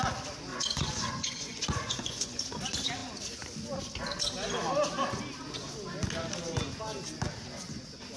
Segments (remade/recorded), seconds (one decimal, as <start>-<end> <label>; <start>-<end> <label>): 0.0-0.5 recorded; 0.5-2.4 remade; 2.4-8.2 recorded